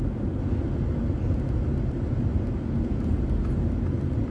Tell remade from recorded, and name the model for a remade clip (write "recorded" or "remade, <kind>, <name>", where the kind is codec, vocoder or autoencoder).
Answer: recorded